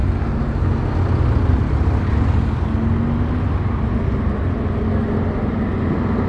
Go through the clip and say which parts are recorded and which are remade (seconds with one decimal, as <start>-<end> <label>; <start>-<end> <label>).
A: 0.0-6.3 recorded